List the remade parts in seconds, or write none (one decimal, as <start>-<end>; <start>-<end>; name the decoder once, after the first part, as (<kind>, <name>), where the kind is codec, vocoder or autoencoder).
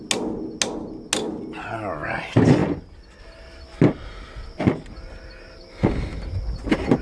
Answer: none